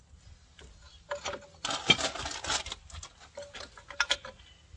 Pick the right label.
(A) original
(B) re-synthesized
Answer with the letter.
A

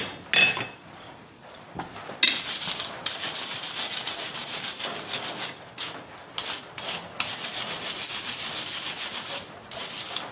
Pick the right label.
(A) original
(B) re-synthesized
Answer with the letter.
A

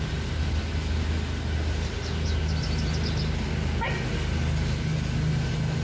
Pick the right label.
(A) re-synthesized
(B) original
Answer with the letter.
B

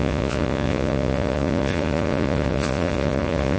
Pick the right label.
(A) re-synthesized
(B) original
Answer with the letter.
A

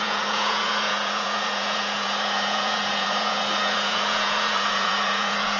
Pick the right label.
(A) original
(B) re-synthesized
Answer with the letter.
B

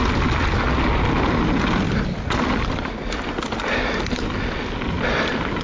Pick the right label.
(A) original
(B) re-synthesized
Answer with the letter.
A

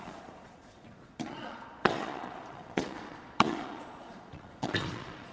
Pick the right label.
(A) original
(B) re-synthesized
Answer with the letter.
B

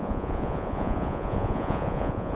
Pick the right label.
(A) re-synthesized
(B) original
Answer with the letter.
A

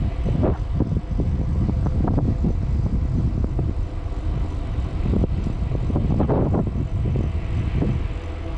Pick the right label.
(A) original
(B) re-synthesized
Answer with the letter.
A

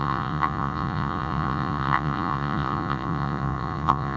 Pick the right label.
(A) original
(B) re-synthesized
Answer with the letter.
B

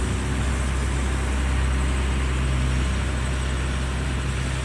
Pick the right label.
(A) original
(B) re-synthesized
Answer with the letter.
A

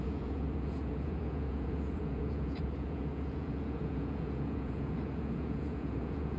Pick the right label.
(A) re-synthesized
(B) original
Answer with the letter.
A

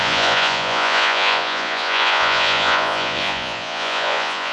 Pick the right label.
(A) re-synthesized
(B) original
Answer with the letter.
A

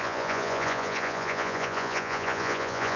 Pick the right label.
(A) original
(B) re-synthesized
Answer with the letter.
B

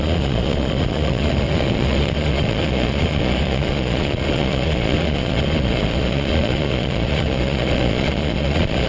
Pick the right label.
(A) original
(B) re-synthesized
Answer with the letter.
B